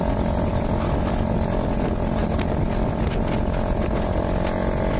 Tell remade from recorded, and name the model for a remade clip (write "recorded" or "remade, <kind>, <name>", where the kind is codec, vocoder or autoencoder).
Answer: recorded